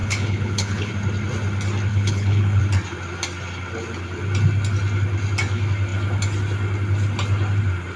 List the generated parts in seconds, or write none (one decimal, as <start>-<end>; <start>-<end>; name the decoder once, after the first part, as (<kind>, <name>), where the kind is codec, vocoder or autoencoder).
0.0-0.9 (codec, HILCodec); 1.9-2.6